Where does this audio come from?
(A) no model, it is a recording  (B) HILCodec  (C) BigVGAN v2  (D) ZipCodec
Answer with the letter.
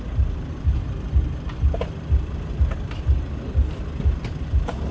A